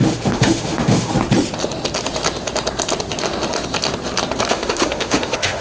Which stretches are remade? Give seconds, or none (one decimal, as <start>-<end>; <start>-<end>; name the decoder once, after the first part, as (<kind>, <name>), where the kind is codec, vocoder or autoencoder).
0.0-1.1 (autoencoder, DAC-VAE); 4.5-5.6